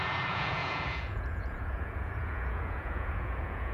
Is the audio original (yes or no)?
no